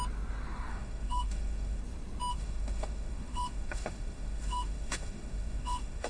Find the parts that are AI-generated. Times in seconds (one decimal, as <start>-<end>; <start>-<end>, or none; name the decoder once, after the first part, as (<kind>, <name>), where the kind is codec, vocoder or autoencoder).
0.7-1.8 (autoencoder, DAC-VAE); 2.3-6.1